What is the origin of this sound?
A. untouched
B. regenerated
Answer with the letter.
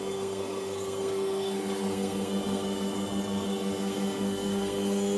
B